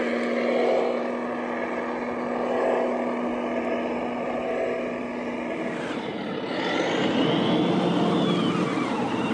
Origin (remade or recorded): recorded